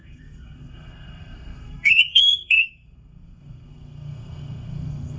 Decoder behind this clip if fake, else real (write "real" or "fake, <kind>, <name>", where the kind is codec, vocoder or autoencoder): fake, codec, SNAC